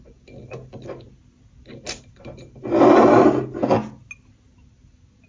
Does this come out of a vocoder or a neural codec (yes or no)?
no